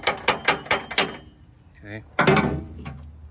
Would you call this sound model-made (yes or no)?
yes